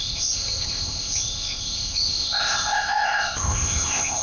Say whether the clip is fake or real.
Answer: fake